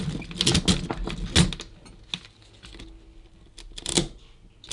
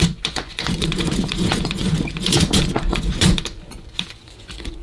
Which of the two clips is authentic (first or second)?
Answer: first